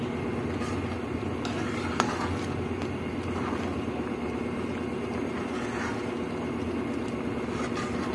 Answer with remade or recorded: recorded